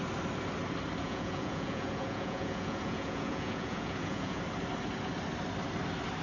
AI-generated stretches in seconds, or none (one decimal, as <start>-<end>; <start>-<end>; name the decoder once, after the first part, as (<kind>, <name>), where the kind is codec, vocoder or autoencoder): 1.0-4.4 (vocoder, Vocos)